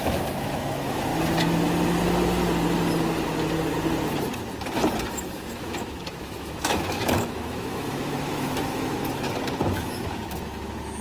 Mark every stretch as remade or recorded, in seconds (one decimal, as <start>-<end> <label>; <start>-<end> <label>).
0.0-1.1 remade; 1.1-5.1 recorded; 5.1-9.0 remade; 9.0-9.7 recorded; 9.7-11.0 remade